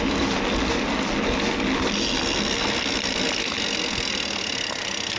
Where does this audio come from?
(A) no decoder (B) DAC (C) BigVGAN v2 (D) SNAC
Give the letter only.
A